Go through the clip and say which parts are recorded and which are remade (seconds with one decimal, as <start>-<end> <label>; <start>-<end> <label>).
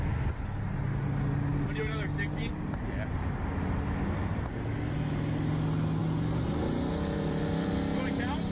0.0-8.5 recorded